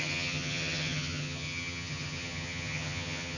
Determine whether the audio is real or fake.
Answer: fake